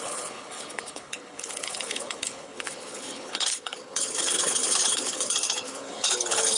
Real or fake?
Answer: fake